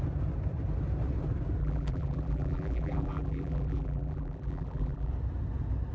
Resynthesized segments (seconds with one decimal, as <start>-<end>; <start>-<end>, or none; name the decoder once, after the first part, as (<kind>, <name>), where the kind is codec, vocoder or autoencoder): 1.6-5.1 (vocoder, BigVGAN v2)